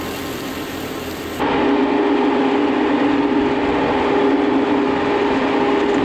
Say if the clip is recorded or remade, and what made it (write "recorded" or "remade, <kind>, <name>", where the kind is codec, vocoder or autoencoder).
recorded